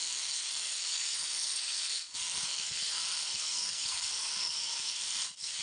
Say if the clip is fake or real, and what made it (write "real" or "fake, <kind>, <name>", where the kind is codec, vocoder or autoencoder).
fake, codec, SNAC